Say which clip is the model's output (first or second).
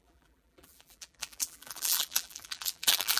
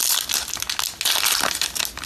first